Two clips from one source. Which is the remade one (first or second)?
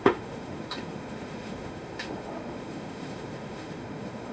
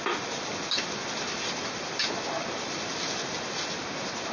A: first